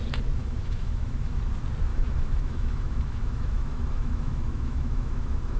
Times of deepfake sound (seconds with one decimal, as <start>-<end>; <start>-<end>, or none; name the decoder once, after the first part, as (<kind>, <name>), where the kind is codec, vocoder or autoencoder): 0.4-1.4 (autoencoder, DAC-VAE); 1.9-5.6